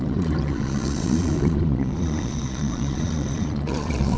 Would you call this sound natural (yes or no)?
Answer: no